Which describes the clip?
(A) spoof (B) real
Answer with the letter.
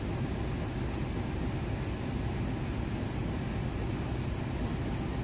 B